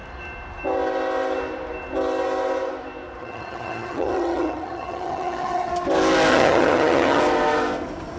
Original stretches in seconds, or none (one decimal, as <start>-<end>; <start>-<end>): 0.0-3.2; 5.7-6.3; 7.2-8.2